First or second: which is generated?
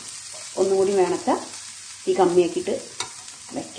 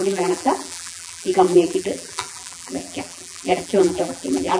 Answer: second